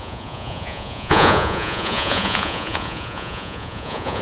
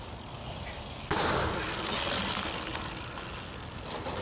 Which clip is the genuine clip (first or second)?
second